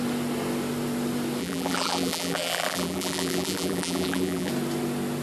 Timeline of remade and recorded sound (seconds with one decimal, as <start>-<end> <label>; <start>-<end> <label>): 0.0-1.4 recorded; 1.4-4.5 remade; 4.5-5.2 recorded